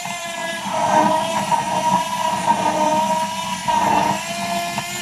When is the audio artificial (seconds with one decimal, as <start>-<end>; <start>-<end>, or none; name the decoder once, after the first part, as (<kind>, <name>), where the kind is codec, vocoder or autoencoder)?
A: 0.0-2.9 (vocoder, BigVGAN v2)